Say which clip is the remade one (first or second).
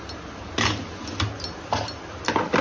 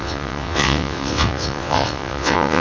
second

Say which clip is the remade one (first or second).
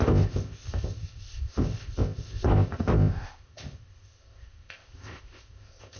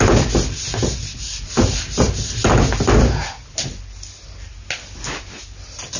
first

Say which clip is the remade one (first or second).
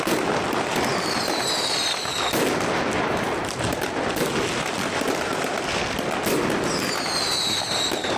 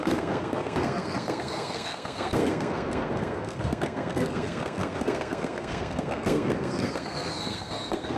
second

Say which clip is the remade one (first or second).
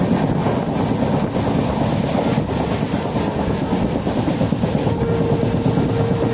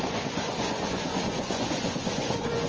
second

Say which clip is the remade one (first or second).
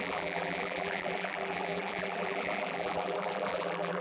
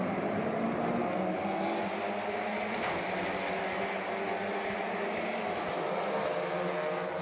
first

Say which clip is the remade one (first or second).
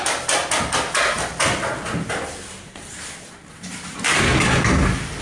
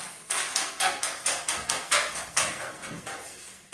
second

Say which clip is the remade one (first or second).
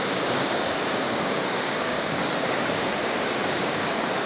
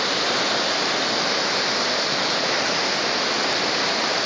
first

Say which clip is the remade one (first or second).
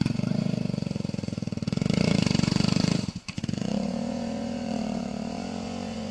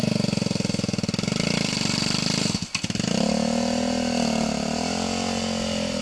first